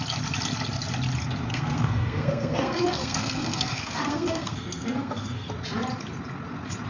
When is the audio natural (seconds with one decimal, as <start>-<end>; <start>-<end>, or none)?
0.0-1.5; 5.5-6.9